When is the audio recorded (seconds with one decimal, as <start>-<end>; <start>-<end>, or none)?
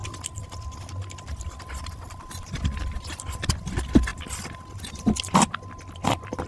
0.0-6.5